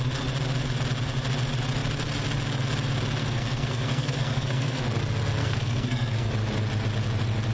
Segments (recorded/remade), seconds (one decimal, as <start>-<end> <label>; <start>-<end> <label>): 0.0-3.2 recorded; 3.2-4.8 remade; 4.8-5.4 recorded; 5.4-6.3 remade; 6.3-7.5 recorded